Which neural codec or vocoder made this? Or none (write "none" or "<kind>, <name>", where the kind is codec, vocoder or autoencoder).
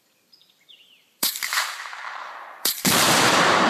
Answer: vocoder, BigVGAN v2